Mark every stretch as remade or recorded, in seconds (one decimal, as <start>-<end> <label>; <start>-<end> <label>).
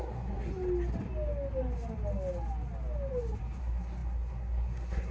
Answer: 0.0-0.5 remade; 0.5-3.6 recorded; 3.6-5.1 remade